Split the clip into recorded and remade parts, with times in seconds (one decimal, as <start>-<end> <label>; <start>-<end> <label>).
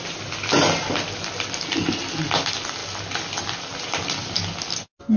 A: 0.0-5.2 recorded